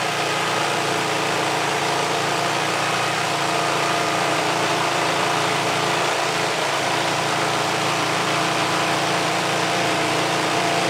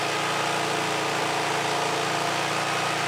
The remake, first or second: first